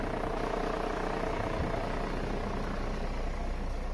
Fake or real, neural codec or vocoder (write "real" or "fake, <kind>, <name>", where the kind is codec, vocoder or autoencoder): real